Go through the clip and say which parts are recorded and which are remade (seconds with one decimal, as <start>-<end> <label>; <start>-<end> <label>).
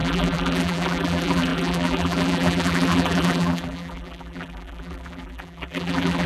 0.0-6.3 remade